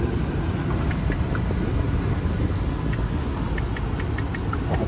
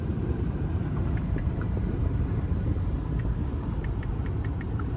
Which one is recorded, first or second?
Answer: first